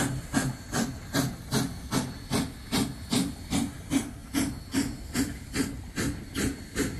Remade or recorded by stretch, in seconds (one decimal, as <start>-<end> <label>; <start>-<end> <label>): 0.0-7.0 recorded